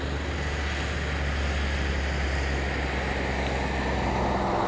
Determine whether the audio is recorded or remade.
recorded